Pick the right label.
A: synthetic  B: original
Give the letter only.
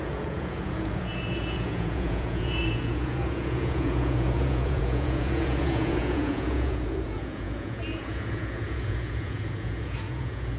A